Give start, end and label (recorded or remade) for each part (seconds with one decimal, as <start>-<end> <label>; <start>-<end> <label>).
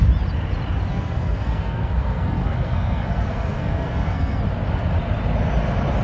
0.0-0.9 recorded; 0.9-4.4 remade; 4.4-6.0 recorded